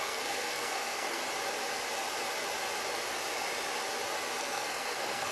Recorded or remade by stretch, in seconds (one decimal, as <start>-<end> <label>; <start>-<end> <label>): 0.0-1.2 remade; 1.2-4.4 recorded; 4.4-5.3 remade